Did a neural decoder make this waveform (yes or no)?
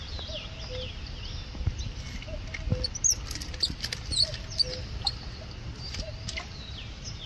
no